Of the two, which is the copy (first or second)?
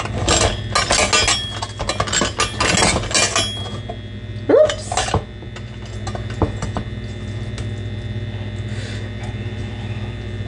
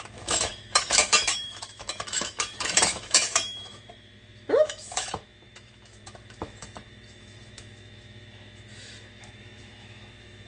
second